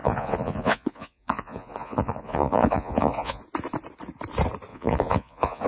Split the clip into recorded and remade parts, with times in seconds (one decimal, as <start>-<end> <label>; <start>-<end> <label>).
0.0-3.4 remade; 3.4-4.7 recorded; 4.7-5.7 remade